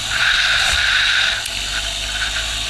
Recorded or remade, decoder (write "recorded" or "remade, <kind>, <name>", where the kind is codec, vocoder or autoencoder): recorded